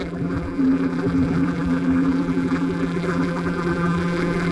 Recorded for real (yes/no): no